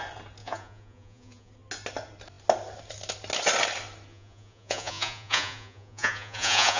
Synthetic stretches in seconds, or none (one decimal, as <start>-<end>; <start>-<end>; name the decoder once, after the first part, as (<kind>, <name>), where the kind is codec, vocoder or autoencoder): 0.4-1.5 (vocoder, Vocos); 4.1-6.8